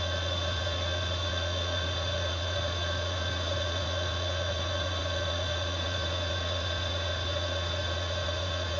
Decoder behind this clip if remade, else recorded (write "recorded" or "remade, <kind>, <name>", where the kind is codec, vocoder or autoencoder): remade, vocoder, Vocos